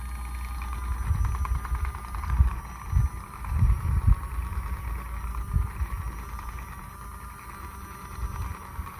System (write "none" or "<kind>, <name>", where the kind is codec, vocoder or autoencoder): none